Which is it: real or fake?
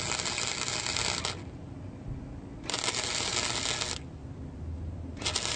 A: real